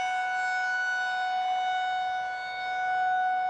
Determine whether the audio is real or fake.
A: real